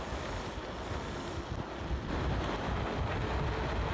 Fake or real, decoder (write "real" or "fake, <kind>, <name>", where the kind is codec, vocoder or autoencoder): real